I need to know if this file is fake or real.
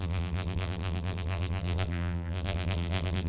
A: fake